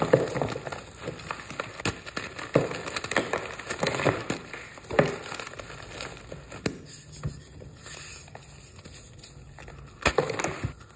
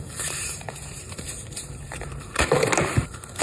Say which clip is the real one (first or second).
first